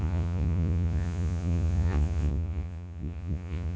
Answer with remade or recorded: remade